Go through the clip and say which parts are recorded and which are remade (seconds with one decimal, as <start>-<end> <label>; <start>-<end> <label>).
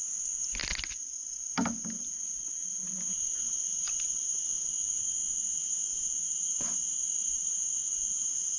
0.0-8.6 recorded